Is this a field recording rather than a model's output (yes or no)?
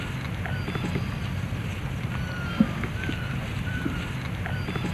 yes